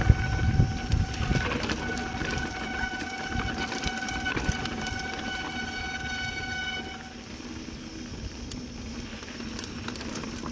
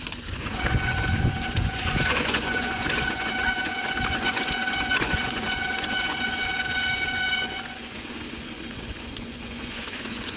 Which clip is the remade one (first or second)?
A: second